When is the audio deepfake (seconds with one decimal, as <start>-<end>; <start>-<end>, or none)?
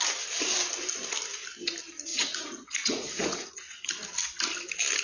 2.1-3.9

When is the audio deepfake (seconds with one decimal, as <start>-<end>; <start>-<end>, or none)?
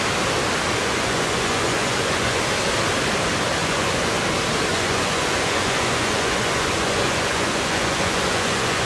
0.8-2.4; 3.6-4.1; 4.7-8.9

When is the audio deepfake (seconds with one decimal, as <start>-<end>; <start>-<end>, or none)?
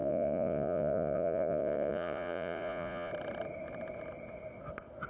0.0-3.1